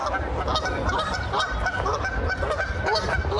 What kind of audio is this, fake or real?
real